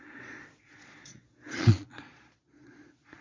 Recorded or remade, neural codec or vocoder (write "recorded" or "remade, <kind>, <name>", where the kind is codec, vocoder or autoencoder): remade, vocoder, Vocos